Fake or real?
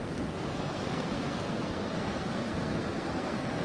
fake